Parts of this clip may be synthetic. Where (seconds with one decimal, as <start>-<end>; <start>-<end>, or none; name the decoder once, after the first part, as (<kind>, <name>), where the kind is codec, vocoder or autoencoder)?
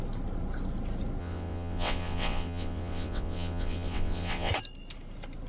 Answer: 1.2-4.5 (vocoder, WaveNeXt)